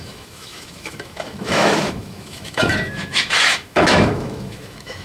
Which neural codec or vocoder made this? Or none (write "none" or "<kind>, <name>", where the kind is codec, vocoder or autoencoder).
autoencoder, DAC-VAE